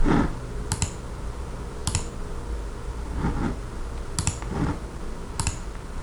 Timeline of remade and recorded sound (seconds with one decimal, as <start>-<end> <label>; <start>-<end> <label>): 0.0-6.0 recorded